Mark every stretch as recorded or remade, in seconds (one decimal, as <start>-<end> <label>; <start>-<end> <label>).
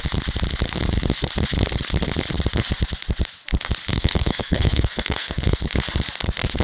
0.0-3.9 recorded; 3.9-5.6 remade; 5.6-6.6 recorded